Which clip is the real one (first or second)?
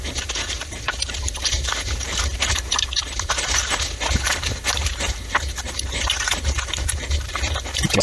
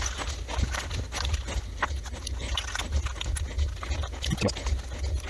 second